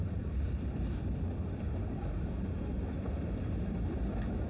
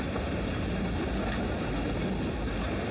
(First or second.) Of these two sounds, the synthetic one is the first